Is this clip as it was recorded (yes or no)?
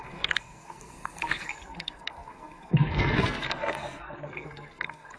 no